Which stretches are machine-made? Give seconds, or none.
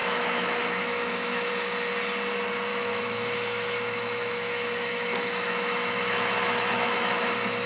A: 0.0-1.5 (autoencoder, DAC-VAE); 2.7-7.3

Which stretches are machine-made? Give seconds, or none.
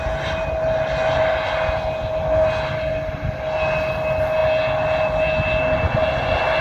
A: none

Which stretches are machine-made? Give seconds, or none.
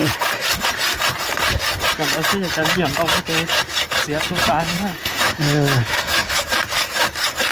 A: 4.5-6.4 (autoencoder, DAC-VAE)